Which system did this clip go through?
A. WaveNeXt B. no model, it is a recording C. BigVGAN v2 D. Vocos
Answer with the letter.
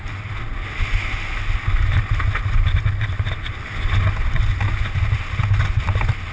B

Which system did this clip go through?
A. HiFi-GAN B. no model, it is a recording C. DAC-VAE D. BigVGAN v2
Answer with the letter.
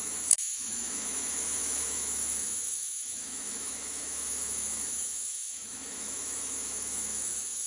C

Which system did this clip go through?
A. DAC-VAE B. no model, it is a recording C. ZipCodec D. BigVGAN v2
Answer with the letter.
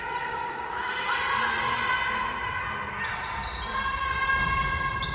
B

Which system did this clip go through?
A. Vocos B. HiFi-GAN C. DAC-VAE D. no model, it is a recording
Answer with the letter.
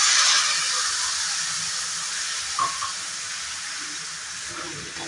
D